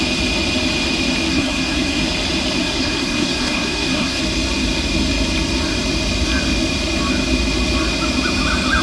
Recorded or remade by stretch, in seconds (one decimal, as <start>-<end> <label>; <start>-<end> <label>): 0.0-1.3 recorded; 1.3-2.0 remade; 2.0-2.6 recorded; 2.6-4.2 remade; 4.2-8.8 recorded